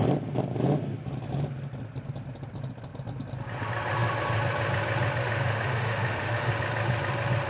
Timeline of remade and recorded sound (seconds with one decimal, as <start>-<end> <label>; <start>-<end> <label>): 0.0-5.2 recorded; 5.2-6.5 remade; 6.5-7.5 recorded